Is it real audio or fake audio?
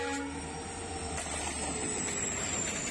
real